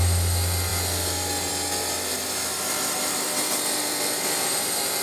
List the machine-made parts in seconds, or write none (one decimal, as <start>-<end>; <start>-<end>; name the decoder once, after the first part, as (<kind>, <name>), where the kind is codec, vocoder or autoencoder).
none